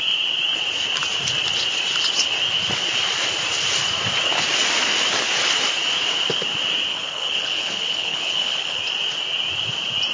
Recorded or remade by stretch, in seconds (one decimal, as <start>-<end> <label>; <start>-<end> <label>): 0.0-6.9 recorded; 6.9-8.8 remade; 8.8-10.1 recorded